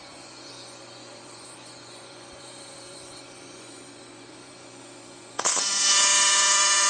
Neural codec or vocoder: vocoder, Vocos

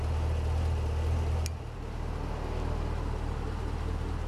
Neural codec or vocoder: none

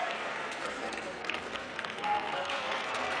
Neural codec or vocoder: codec, SNAC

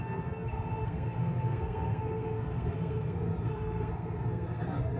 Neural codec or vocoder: codec, SNAC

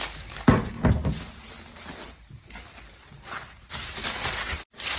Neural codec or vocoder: none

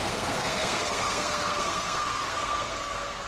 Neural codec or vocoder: codec, SNAC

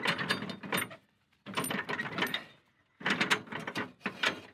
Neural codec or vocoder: none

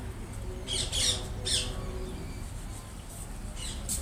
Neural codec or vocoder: none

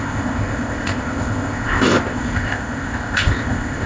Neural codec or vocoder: codec, ZipCodec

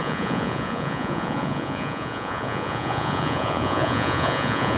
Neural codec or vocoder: vocoder, Vocos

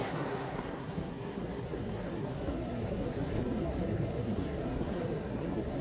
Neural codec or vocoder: codec, SNAC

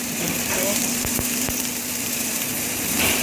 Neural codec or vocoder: vocoder, BigVGAN v2